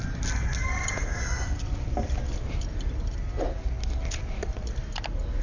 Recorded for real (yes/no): yes